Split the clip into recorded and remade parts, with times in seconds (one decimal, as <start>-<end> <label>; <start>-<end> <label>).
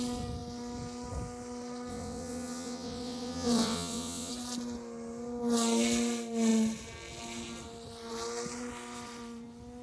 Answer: 0.0-1.9 recorded; 1.9-4.3 remade; 4.3-9.8 recorded